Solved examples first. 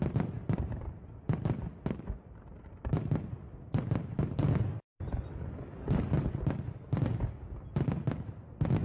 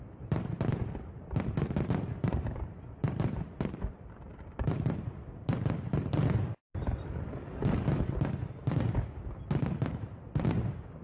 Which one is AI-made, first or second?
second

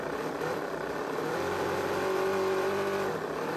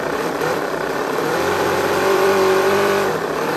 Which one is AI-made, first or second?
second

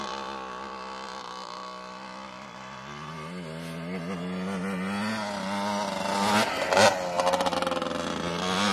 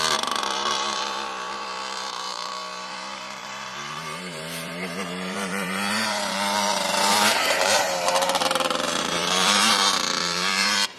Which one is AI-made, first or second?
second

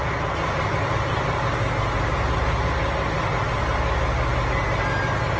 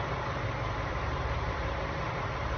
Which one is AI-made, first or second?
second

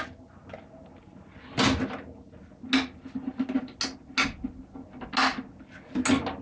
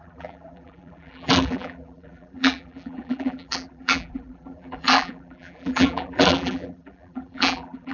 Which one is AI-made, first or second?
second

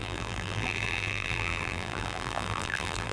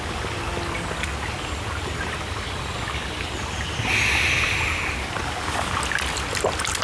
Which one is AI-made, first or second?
first